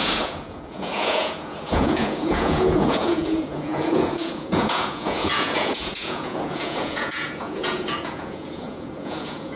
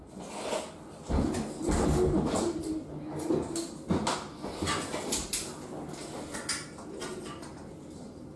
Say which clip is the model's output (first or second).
first